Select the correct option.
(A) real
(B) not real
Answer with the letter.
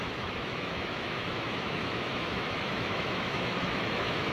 B